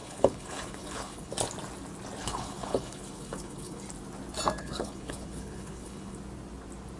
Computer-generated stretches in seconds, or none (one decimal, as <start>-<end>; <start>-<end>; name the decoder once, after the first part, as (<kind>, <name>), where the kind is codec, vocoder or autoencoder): 0.0-1.3 (codec, HILCodec); 2.2-3.8; 4.6-6.2